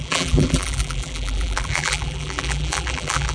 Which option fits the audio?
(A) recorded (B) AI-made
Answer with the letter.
B